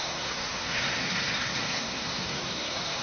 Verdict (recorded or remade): remade